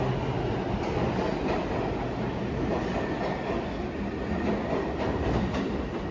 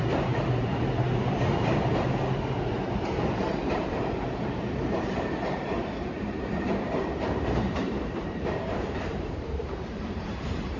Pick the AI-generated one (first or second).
second